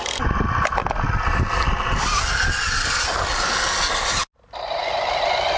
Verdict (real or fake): real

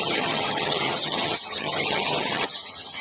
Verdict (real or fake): fake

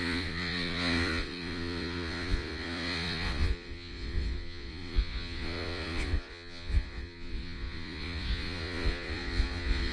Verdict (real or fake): fake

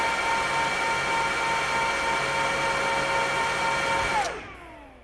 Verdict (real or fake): real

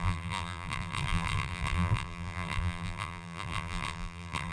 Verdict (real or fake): fake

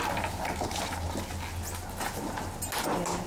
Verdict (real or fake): real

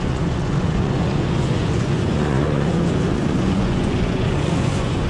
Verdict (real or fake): fake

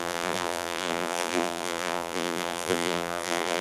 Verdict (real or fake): fake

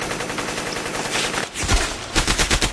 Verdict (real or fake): real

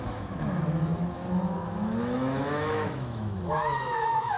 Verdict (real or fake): fake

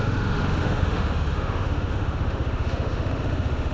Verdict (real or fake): fake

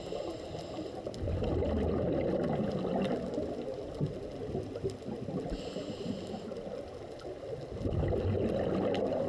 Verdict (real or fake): real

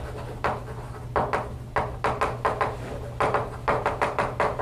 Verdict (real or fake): real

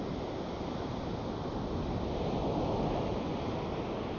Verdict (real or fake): real